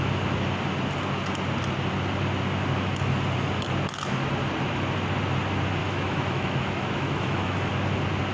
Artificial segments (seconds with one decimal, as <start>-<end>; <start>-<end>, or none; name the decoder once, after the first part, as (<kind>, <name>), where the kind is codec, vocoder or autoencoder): 5.8-7.7 (autoencoder, DAC-VAE)